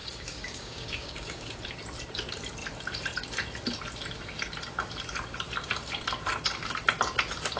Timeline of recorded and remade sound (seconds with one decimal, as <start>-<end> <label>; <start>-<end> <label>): 0.0-1.5 remade; 1.5-7.6 recorded